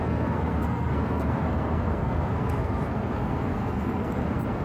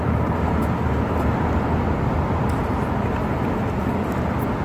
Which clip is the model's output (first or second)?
first